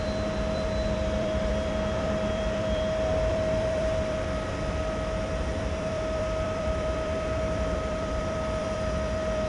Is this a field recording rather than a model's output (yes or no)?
no